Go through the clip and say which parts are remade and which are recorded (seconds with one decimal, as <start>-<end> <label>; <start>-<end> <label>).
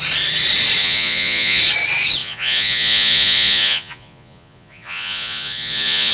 0.0-0.8 recorded; 0.8-1.6 remade; 1.6-2.2 recorded; 2.2-6.1 remade